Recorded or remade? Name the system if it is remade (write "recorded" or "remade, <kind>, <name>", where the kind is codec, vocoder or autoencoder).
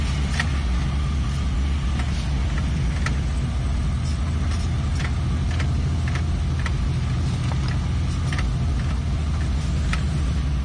recorded